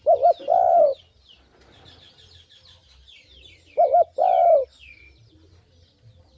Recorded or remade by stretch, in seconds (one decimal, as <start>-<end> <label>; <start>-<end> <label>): 0.0-6.4 recorded